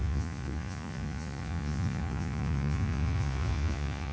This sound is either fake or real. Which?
fake